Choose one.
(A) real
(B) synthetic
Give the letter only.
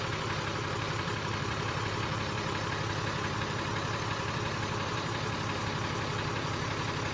B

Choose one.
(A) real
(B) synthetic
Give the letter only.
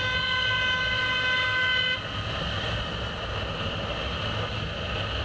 A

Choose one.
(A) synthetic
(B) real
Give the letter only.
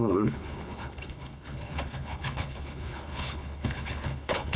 A